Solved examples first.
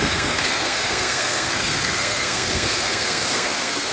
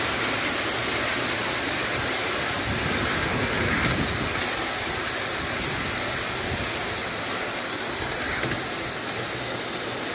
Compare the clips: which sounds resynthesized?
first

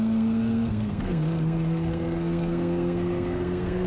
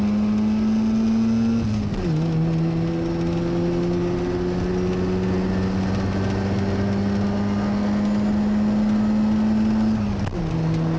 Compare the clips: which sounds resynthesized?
first